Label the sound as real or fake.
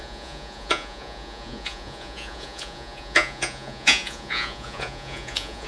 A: fake